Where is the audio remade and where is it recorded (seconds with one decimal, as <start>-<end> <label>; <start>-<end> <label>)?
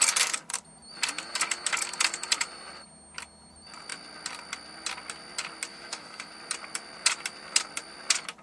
0.0-5.7 recorded; 5.7-6.3 remade; 6.3-8.4 recorded